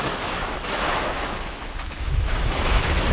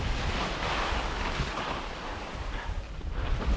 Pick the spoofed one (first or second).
first